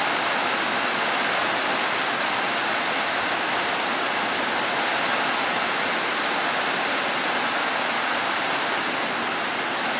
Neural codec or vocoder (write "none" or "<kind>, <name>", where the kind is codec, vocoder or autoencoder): none